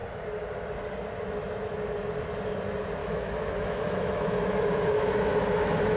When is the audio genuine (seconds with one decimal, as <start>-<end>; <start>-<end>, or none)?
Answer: 0.0-3.0